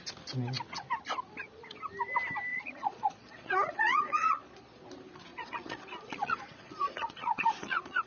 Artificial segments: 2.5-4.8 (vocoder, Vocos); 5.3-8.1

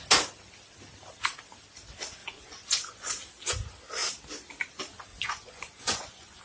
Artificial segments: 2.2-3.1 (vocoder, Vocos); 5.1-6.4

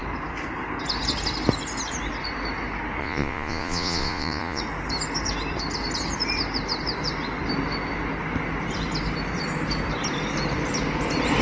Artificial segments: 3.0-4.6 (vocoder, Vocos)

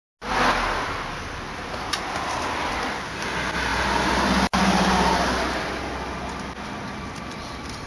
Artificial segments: none

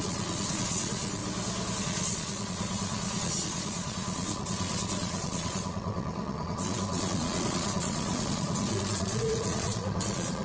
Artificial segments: 0.0-1.2 (vocoder, Vocos); 1.8-10.4

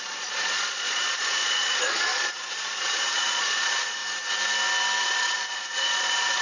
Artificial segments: 0.0-4.0 (vocoder, Vocos); 5.0-6.4